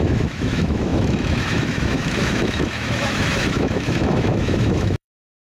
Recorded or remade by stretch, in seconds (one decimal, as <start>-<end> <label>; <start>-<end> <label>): 0.0-5.5 remade